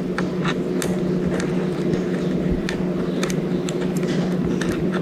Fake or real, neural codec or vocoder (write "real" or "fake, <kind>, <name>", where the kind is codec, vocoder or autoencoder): real